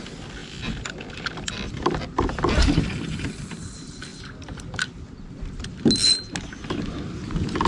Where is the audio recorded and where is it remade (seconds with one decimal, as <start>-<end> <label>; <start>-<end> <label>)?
0.0-0.4 recorded; 0.4-3.5 remade; 3.5-7.7 recorded

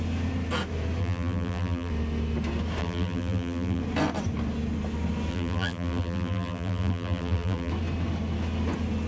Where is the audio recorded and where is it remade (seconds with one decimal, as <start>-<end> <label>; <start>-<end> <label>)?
0.0-1.0 recorded; 1.0-1.9 remade; 1.9-2.8 recorded; 2.8-3.8 remade; 3.8-5.3 recorded; 5.3-7.7 remade; 7.7-9.1 recorded

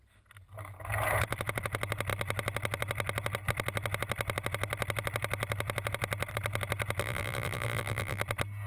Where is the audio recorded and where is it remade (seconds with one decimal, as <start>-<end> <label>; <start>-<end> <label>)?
0.0-7.0 recorded; 7.0-8.2 remade; 8.2-8.7 recorded

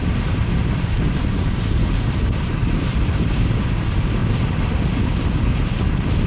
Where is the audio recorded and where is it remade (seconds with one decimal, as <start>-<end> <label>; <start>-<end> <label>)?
0.0-4.2 remade; 4.2-6.3 recorded

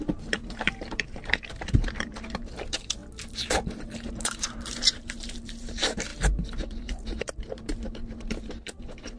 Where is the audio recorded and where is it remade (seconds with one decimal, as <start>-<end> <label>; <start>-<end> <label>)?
0.0-3.0 remade; 3.0-3.8 recorded; 3.8-9.2 remade

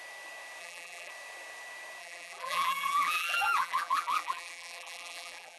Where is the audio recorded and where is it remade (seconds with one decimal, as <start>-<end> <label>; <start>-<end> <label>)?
0.0-0.6 recorded; 0.6-1.1 remade; 1.1-2.0 recorded; 2.0-5.6 remade